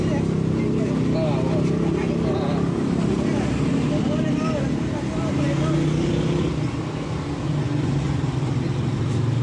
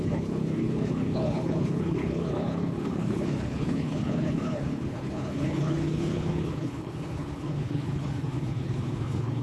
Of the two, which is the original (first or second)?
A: first